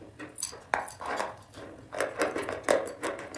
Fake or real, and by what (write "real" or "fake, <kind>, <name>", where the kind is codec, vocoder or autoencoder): real